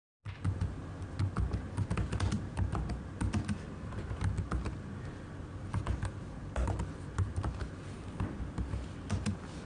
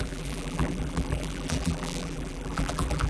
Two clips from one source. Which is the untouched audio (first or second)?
first